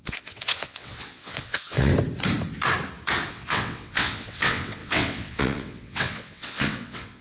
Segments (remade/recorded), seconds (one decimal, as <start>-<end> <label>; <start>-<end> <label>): 0.0-1.9 remade; 1.9-3.3 recorded; 3.3-7.2 remade